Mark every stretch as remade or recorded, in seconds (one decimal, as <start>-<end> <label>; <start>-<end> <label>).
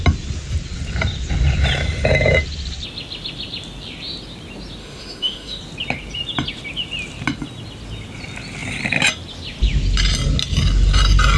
0.0-4.8 recorded; 4.8-5.6 remade; 5.6-11.4 recorded